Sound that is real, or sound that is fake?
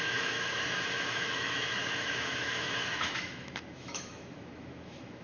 fake